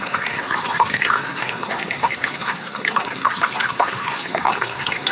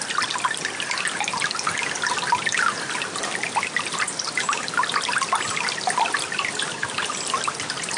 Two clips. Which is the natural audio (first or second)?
second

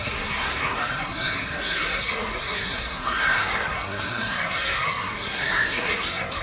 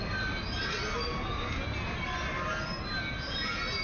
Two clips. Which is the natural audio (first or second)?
second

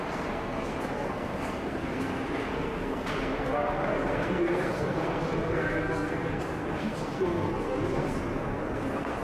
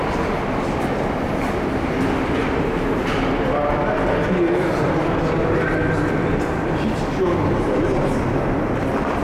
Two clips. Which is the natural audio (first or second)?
second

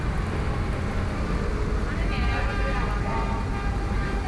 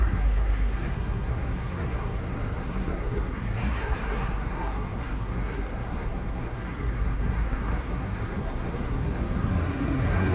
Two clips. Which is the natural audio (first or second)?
first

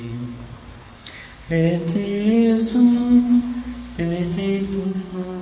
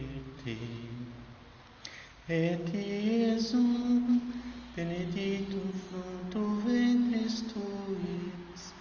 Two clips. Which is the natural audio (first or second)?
second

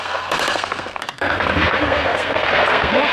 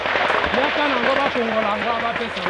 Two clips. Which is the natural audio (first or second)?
second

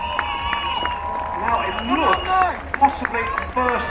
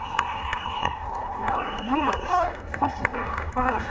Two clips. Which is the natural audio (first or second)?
first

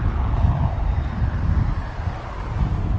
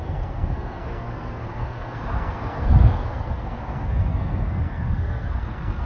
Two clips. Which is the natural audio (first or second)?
first